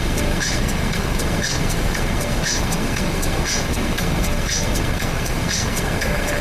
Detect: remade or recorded remade